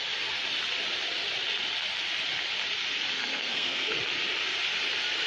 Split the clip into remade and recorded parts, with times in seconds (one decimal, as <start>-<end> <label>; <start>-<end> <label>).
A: 0.0-3.2 recorded; 3.2-4.0 remade; 4.0-5.3 recorded